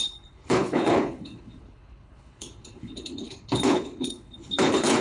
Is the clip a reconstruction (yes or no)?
yes